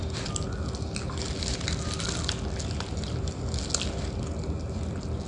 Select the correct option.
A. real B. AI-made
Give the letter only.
A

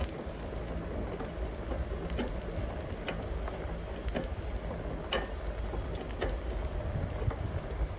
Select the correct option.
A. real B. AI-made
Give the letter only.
A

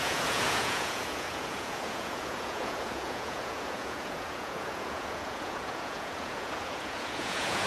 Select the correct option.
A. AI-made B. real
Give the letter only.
A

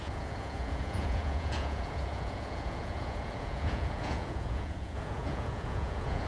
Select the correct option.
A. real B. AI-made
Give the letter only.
B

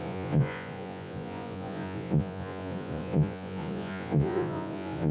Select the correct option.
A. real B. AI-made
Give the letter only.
B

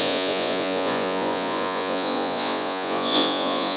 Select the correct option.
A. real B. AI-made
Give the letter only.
B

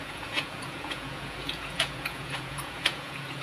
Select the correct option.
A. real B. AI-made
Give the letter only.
B